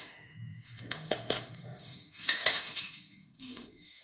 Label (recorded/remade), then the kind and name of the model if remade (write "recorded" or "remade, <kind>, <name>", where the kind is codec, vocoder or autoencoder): remade, autoencoder, DAC-VAE